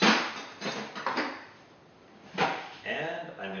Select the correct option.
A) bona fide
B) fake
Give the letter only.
A